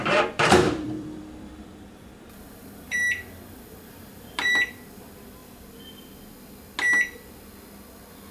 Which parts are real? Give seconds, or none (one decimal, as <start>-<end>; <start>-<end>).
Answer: 5.0-8.3